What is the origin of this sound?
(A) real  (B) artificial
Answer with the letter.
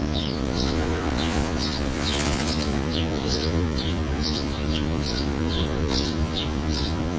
B